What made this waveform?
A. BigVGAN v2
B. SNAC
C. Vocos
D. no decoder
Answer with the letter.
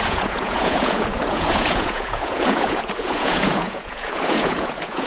C